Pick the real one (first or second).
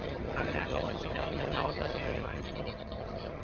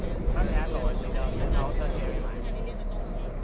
second